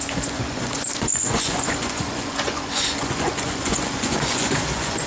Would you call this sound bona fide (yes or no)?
no